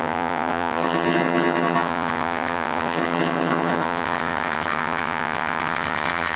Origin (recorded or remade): remade